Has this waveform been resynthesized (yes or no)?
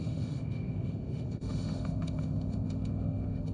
yes